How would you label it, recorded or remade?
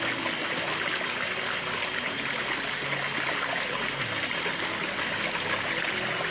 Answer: recorded